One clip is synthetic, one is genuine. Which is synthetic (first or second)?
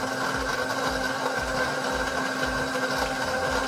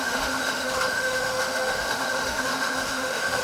second